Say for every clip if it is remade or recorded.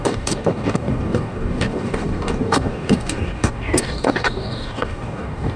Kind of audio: remade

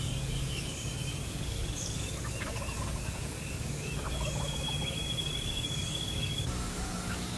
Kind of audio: remade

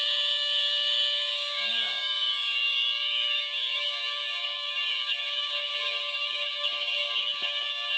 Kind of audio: remade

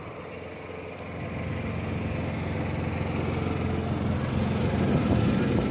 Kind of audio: recorded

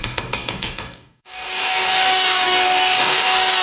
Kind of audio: remade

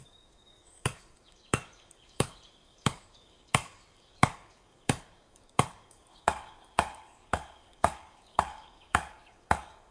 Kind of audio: remade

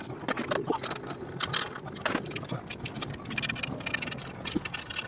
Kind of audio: recorded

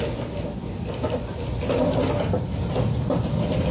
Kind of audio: recorded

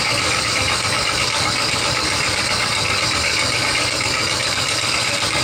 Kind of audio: remade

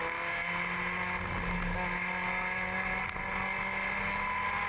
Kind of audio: recorded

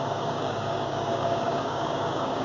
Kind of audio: remade